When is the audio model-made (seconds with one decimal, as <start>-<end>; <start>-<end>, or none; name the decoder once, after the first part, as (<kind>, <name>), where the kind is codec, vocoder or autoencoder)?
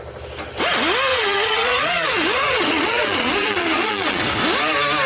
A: 1.1-4.2 (vocoder, Vocos)